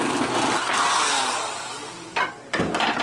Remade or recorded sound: recorded